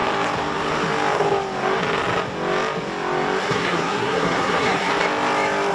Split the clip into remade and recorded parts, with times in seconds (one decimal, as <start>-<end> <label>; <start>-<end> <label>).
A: 0.0-3.4 recorded; 3.4-4.9 remade; 4.9-5.7 recorded